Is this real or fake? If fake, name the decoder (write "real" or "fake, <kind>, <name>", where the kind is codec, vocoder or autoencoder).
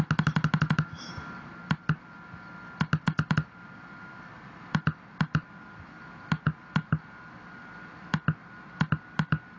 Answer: real